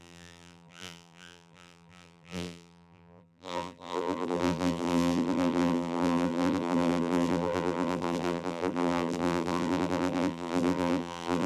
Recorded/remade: remade